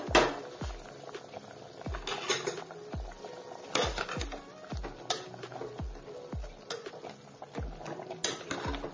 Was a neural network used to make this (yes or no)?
no